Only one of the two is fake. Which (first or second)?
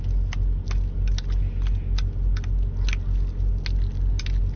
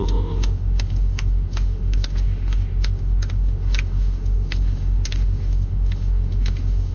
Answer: second